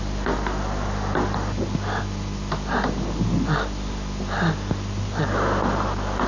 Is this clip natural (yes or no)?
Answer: yes